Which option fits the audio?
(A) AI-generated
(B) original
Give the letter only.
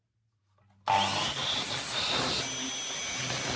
B